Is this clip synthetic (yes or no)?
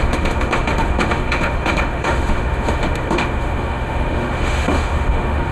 yes